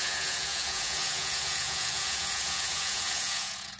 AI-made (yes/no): yes